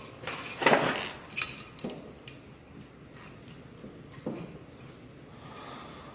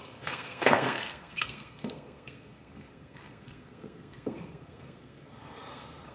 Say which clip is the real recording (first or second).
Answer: first